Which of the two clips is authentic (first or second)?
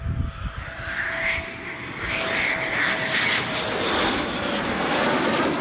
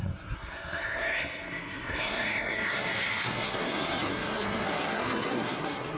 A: first